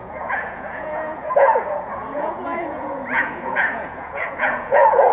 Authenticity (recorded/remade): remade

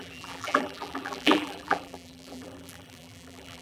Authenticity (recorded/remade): remade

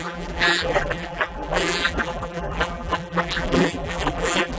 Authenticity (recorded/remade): remade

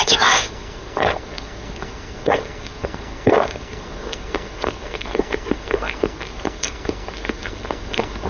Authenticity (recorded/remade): remade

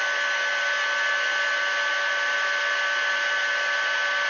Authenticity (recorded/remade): recorded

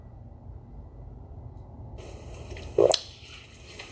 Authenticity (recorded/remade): recorded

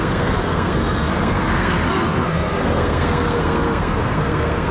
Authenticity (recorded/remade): remade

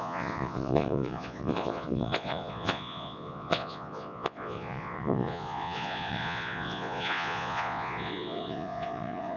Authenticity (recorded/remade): remade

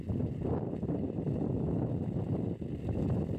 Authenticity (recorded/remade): recorded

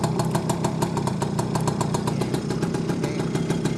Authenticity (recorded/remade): recorded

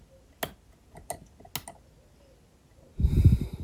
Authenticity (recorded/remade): recorded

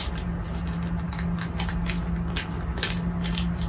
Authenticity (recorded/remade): recorded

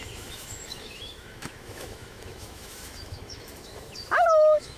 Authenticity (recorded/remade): remade